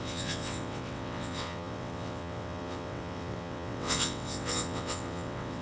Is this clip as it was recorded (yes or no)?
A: no